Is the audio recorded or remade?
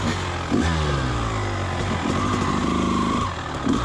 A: recorded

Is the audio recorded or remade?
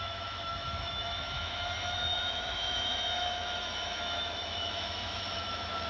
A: remade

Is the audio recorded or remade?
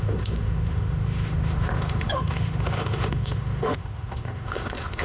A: remade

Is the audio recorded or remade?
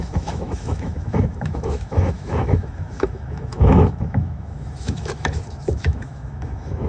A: remade